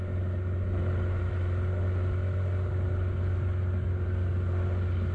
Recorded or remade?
recorded